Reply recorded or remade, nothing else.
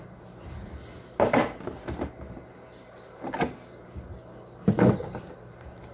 recorded